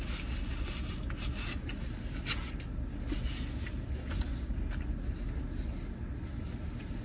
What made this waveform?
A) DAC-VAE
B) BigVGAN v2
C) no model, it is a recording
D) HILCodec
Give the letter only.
C